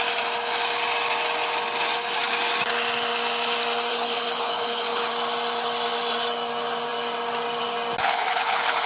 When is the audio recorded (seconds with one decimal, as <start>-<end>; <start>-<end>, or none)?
0.0-3.9; 5.1-8.0